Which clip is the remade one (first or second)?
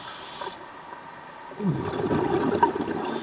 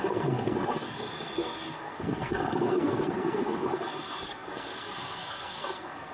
second